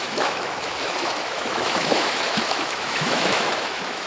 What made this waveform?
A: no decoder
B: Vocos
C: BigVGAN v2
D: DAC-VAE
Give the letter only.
D